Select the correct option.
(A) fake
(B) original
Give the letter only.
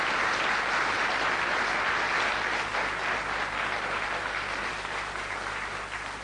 B